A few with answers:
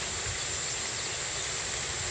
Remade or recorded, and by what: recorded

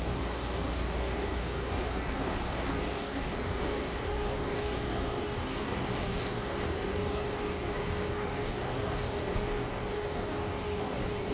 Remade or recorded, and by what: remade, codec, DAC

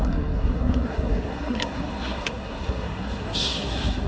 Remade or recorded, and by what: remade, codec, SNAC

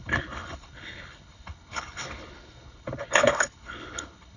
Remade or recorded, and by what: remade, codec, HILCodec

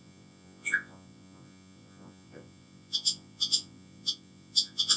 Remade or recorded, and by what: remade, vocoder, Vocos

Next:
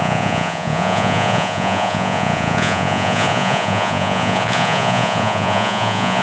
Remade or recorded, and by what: remade, vocoder, Vocos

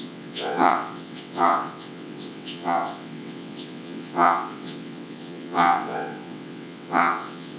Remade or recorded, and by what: remade, vocoder, WaveNeXt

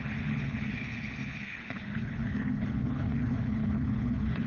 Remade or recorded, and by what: remade, codec, HILCodec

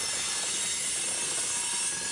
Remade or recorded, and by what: recorded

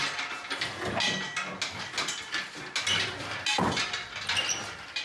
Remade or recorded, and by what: recorded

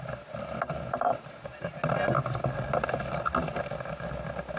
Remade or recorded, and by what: recorded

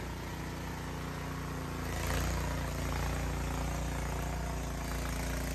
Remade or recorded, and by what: recorded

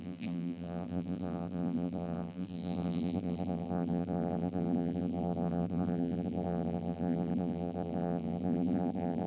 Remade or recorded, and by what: remade, vocoder, BigVGAN v2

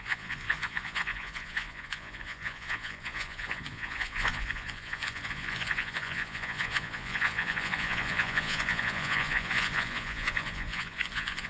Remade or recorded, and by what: remade, vocoder, Vocos